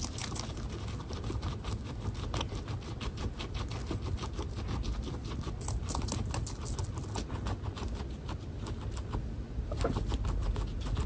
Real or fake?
real